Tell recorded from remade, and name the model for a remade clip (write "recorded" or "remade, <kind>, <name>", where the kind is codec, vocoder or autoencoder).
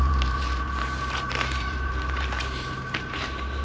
remade, vocoder, BigVGAN v2